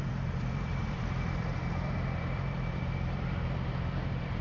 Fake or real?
fake